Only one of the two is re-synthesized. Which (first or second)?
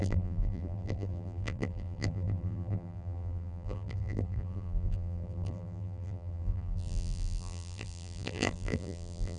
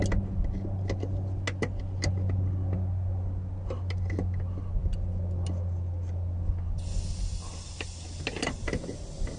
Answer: first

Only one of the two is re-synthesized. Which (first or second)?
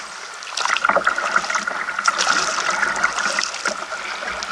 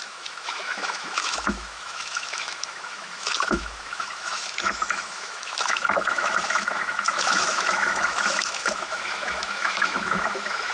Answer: second